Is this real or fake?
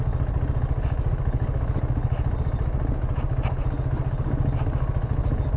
real